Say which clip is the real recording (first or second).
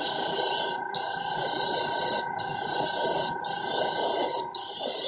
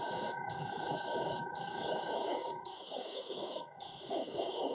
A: first